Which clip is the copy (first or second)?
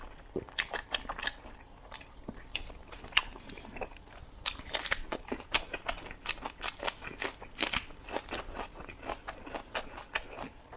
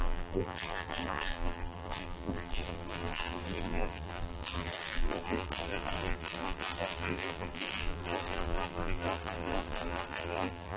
second